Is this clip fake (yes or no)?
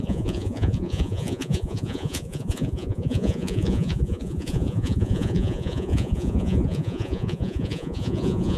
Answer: yes